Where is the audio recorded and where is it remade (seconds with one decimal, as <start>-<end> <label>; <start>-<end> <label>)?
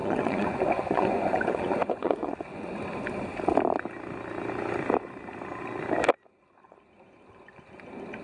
0.0-2.7 remade; 2.7-8.2 recorded